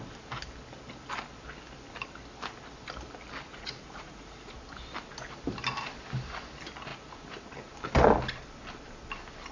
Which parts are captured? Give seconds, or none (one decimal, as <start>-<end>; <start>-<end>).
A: 0.0-3.5; 4.5-9.5